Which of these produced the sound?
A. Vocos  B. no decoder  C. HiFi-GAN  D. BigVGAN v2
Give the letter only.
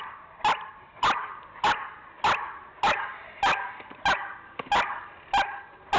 B